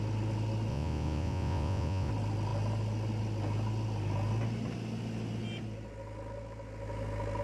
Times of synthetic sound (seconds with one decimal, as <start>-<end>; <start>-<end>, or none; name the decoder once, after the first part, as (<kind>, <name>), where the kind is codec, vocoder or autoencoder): 0.7-2.1 (vocoder, Vocos)